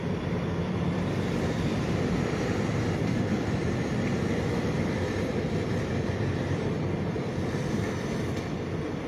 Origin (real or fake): fake